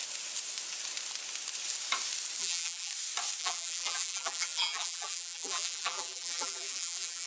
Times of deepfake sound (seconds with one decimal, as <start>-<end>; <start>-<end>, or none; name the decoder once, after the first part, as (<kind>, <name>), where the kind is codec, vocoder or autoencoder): 2.4-2.9 (vocoder, BigVGAN v2); 3.4-7.3